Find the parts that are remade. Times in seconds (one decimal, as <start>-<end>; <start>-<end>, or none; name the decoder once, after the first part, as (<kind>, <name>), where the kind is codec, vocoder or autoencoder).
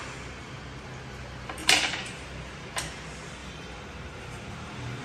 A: 1.6-2.7 (vocoder, BigVGAN v2); 3.4-5.0